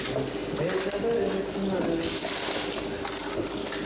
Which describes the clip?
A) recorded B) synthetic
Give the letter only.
A